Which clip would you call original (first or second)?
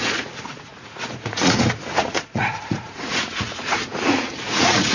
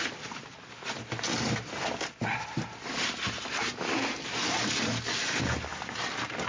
second